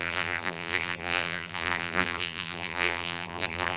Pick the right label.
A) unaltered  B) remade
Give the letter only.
B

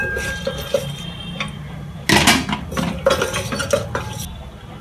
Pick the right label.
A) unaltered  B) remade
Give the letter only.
A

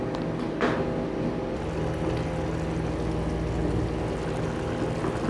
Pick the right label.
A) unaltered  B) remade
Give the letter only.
A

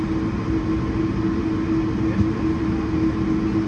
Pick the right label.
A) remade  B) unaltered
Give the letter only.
B